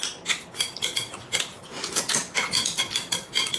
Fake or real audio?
real